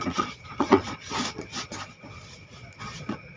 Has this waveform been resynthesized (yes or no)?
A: yes